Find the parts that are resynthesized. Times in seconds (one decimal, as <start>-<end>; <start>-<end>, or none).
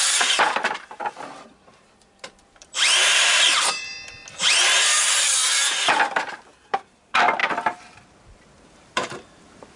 0.0-1.0; 1.7-3.9; 6.1-7.4; 8.7-9.8